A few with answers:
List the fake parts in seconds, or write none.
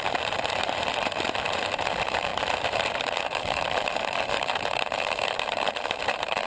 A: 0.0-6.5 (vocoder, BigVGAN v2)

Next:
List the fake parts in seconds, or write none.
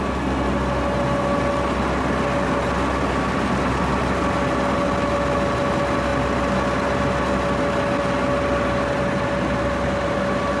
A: none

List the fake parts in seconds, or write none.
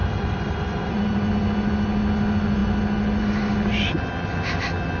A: 0.0-1.3 (vocoder, BigVGAN v2)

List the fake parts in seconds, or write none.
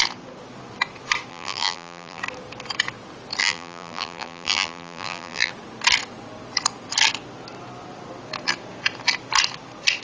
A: 1.3-2.2 (vocoder, BigVGAN v2); 3.4-5.5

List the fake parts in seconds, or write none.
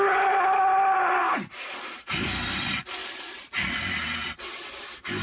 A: 1.2-3.0 (vocoder, BigVGAN v2); 4.8-5.2